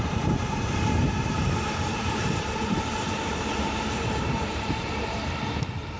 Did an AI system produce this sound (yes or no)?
yes